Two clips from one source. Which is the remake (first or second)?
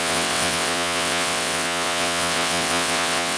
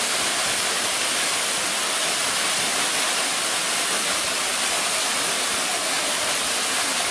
first